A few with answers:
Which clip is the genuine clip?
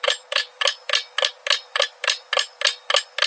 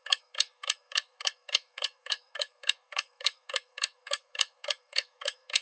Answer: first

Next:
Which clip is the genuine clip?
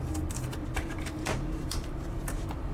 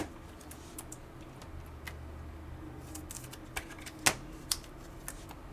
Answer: second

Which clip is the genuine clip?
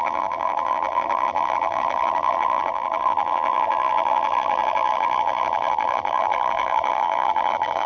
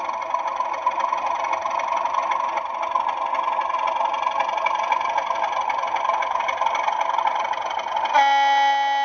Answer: second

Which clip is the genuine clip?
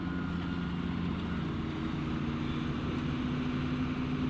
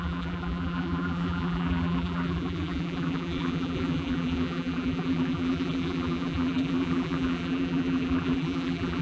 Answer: first